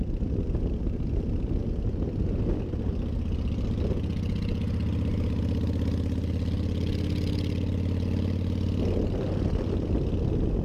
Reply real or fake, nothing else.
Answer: real